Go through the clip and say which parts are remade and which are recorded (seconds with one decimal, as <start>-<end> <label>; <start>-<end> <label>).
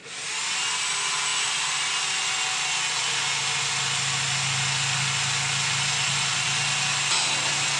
0.0-7.8 recorded